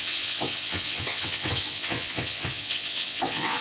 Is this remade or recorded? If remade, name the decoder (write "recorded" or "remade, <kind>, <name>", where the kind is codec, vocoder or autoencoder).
remade, vocoder, WaveNeXt